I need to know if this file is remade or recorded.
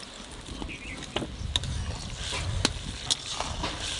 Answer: recorded